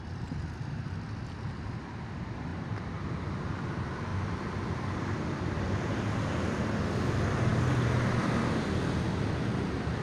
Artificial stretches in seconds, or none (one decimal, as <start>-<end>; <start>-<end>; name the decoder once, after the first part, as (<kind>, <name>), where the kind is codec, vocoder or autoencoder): 2.5-3.0 (vocoder, BigVGAN v2); 4.1-6.4